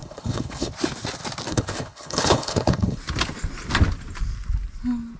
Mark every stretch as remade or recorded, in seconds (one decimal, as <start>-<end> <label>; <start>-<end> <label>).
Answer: 0.0-0.7 remade; 0.7-1.5 recorded; 1.5-3.0 remade; 3.0-5.2 recorded